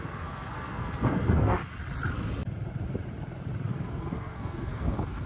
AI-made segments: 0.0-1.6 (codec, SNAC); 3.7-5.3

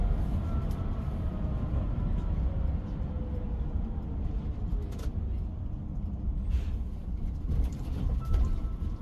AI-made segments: none

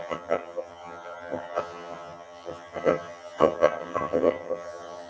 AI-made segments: 0.0-5.1 (vocoder, HiFi-GAN)

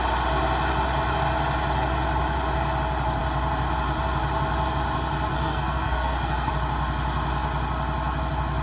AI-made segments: 5.3-6.5 (codec, SNAC)

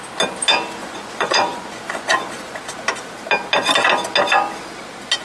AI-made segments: 0.8-2.6 (vocoder, Vocos)